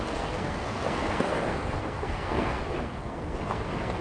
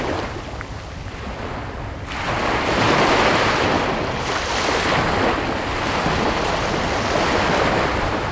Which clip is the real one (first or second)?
second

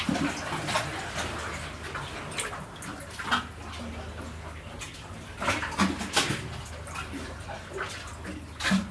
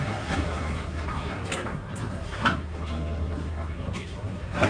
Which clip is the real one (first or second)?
first